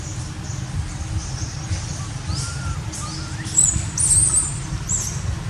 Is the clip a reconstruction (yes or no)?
no